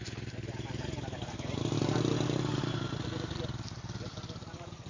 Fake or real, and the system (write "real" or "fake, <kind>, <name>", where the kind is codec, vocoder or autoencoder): real